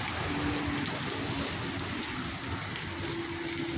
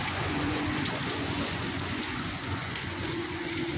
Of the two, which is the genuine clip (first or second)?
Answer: first